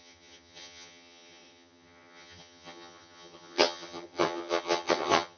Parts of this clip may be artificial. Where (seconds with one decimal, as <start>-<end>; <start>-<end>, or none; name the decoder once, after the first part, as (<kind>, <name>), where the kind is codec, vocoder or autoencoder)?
0.0-5.4 (vocoder, HiFi-GAN)